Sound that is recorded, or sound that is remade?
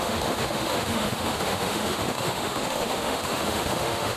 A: remade